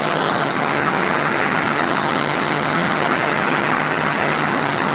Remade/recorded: remade